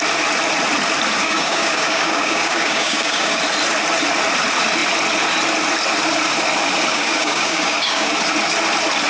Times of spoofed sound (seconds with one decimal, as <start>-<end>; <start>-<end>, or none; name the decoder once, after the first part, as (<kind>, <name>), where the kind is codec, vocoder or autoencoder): 1.2-3.4 (codec, DAC); 6.9-8.1